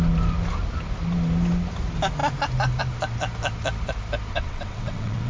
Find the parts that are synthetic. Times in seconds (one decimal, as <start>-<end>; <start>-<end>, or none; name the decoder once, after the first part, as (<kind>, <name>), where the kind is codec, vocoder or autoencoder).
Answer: 4.3-5.3 (vocoder, WaveNeXt)